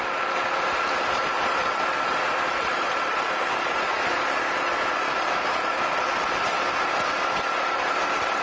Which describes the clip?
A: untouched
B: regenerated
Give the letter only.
A